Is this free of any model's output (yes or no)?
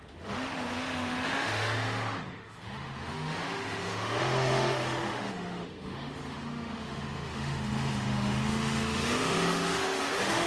no